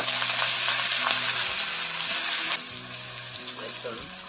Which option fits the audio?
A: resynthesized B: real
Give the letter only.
B